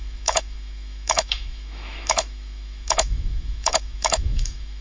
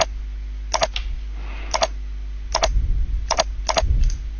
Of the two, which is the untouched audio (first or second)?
second